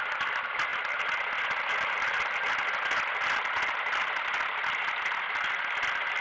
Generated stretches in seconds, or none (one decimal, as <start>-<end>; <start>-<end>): none